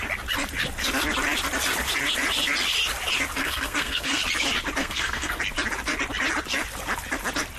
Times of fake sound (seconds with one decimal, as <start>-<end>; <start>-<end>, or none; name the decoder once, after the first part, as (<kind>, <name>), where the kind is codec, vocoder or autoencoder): 3.4-4.2 (codec, SNAC); 4.8-5.4